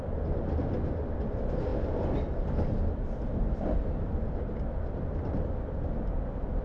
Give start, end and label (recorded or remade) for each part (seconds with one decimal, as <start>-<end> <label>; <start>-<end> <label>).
0.0-6.6 recorded